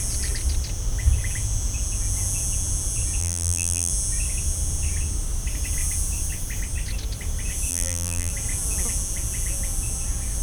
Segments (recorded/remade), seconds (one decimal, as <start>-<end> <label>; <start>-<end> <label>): 0.0-3.2 recorded; 3.2-3.9 remade; 3.9-7.7 recorded; 7.7-8.3 remade; 8.3-10.4 recorded